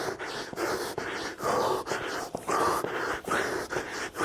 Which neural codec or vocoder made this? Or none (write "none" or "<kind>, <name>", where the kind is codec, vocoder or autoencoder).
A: none